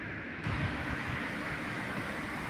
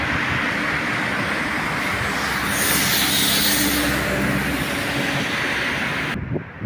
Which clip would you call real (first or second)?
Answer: second